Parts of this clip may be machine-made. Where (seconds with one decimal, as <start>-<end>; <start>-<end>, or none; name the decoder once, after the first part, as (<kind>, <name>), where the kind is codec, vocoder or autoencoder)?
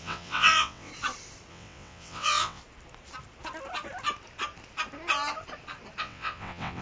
0.0-0.9 (vocoder, WaveNeXt); 1.5-2.6; 6.0-6.8